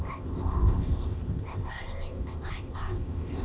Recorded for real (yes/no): no